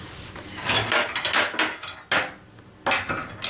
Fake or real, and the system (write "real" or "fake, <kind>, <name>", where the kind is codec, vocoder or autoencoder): real